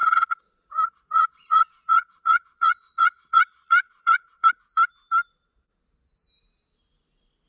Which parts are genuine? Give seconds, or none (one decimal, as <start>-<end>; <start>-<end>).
4.5-7.5